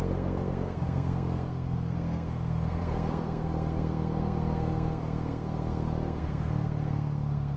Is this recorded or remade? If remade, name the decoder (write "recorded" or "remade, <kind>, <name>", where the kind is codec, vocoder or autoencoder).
remade, codec, SNAC